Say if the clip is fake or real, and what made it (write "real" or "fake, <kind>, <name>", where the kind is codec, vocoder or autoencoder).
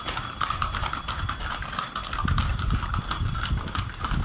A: real